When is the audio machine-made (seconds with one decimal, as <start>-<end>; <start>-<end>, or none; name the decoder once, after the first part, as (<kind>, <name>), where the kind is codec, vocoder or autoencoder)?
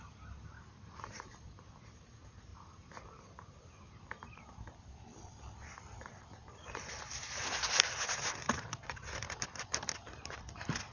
none